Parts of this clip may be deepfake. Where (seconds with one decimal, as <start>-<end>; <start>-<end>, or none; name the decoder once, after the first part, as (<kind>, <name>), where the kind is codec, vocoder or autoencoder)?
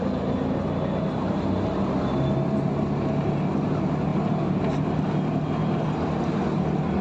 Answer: 5.6-7.0 (vocoder, BigVGAN v2)